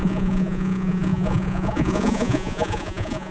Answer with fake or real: fake